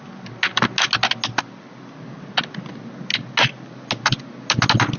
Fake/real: real